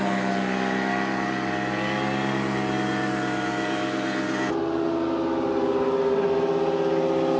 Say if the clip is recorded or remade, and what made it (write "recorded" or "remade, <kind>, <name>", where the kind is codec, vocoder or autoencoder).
recorded